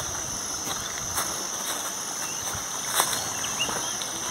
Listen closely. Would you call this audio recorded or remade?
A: recorded